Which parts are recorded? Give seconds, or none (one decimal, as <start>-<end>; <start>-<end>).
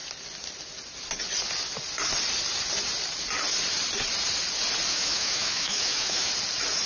0.0-4.9; 6.3-6.9